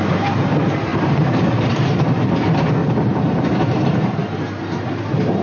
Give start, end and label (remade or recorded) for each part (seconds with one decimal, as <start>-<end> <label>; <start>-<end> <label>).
0.0-2.8 remade; 2.8-3.4 recorded; 3.4-4.2 remade; 4.2-4.8 recorded; 4.8-5.4 remade

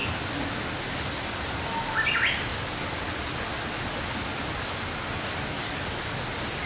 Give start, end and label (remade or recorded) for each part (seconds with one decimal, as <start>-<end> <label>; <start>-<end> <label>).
0.0-6.7 recorded

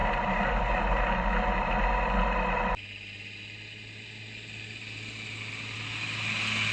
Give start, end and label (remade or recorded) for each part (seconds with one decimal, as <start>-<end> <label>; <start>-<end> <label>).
0.0-6.7 recorded

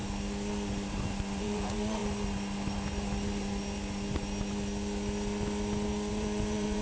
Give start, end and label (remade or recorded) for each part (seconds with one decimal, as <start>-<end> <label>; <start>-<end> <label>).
0.0-1.4 recorded; 1.4-2.0 remade; 2.0-6.1 recorded; 6.1-6.8 remade

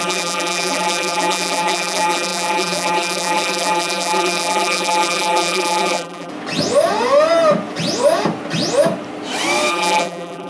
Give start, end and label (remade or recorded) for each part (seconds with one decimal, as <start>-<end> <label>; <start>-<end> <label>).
0.0-6.3 remade; 6.3-9.7 recorded; 9.7-10.5 remade